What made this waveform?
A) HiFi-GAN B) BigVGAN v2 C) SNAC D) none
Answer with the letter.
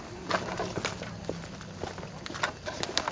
D